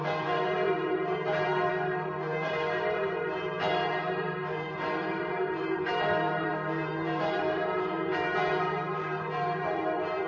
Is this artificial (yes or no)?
yes